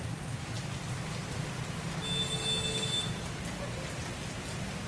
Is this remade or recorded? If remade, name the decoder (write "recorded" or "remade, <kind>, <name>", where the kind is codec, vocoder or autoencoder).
recorded